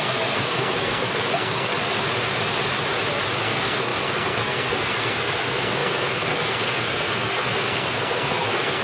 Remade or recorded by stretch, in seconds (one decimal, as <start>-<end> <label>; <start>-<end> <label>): 0.0-1.7 remade; 1.7-3.4 recorded; 3.4-8.8 remade